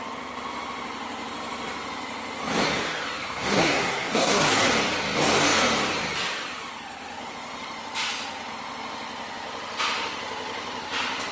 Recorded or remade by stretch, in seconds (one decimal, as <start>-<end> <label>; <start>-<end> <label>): 0.0-3.2 recorded; 3.2-4.7 remade; 4.7-11.3 recorded